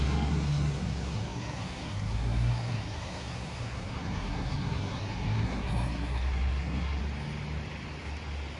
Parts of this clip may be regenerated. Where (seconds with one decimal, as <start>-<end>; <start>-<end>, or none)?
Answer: 0.0-7.0